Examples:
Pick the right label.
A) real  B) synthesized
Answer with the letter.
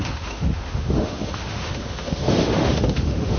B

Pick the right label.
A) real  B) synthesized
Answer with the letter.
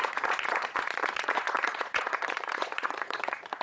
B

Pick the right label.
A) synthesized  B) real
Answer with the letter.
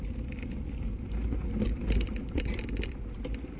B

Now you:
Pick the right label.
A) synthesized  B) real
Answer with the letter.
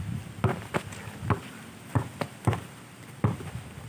B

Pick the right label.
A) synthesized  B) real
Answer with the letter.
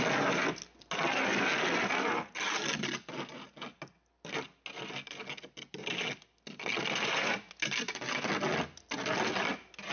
B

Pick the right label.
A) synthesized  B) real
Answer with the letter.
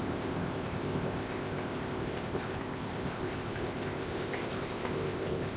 A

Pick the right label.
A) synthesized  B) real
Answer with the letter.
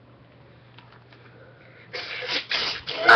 B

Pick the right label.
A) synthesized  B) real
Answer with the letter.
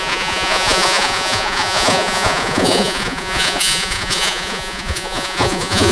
A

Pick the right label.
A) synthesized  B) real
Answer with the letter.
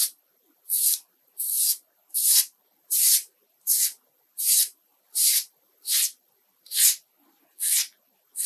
A